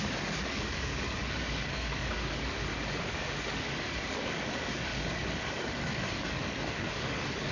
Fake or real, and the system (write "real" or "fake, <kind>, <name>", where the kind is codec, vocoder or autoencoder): fake, codec, DAC